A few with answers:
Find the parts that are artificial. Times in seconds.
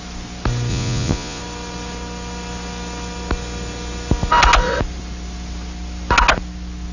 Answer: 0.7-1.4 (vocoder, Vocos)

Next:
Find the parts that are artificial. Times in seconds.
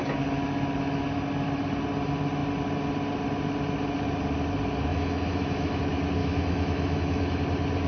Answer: 4.9-5.8 (autoencoder, DAC-VAE); 6.2-7.4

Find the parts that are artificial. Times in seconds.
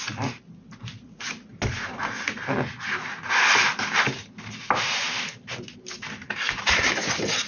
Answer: none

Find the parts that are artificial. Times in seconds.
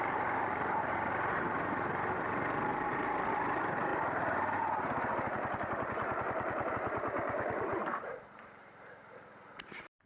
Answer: 0.0-3.9 (vocoder, BigVGAN v2); 6.7-10.1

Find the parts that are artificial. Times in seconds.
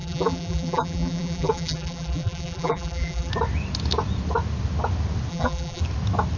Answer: 0.0-3.3 (vocoder, BigVGAN v2); 5.3-5.8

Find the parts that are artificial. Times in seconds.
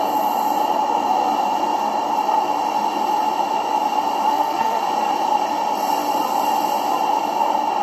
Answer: 4.3-4.8 (codec, SNAC)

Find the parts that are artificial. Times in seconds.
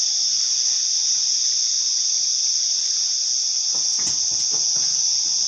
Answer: none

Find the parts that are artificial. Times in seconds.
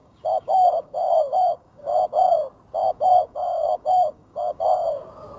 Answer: 0.0-2.0 (codec, DAC); 2.8-5.0